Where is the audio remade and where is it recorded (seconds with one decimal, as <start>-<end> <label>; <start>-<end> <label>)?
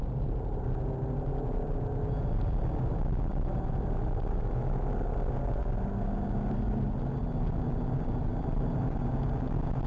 0.0-9.9 recorded